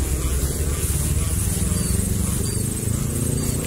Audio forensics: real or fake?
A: real